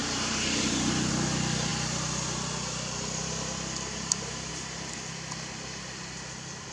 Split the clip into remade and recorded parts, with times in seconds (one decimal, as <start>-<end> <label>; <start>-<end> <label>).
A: 0.0-1.1 remade; 1.1-6.7 recorded